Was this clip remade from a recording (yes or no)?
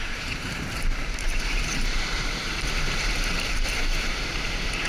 yes